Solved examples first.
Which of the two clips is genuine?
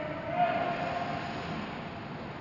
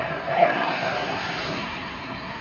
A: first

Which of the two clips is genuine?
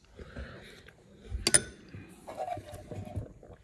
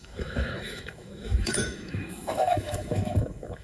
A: first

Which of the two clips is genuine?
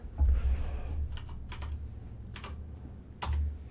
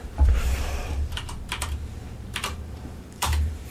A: first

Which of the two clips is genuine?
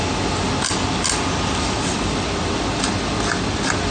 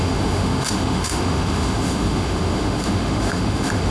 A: first